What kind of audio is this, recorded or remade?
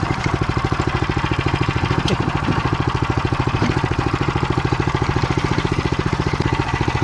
remade